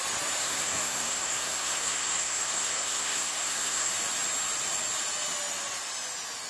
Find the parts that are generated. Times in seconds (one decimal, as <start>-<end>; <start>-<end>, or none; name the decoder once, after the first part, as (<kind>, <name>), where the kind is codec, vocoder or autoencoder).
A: 0.4-3.9 (codec, SNAC)